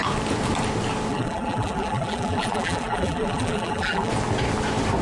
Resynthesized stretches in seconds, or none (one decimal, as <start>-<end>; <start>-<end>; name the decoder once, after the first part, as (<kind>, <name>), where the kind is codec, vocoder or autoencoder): 1.1-4.1 (vocoder, BigVGAN v2)